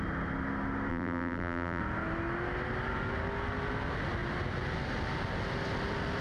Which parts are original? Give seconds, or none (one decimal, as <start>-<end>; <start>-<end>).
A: 0.0-0.9; 1.8-6.2

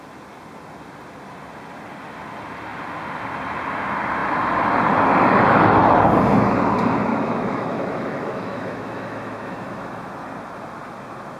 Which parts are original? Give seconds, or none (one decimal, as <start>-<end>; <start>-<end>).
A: 0.0-7.1; 10.1-11.4